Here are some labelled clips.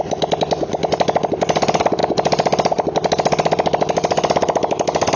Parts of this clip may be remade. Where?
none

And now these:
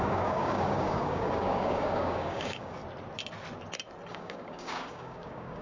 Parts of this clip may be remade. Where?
0.0-2.8 (codec, DAC); 4.1-5.6

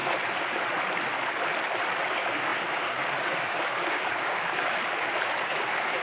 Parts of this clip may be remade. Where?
2.1-4.8 (codec, DAC); 5.3-6.0